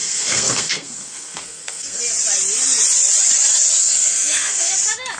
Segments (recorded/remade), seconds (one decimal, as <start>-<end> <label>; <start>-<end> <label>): 0.0-2.0 remade; 2.0-3.8 recorded; 3.8-4.7 remade; 4.7-5.2 recorded